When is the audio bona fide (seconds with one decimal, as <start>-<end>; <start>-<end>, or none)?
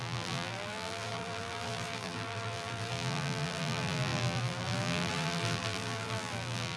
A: none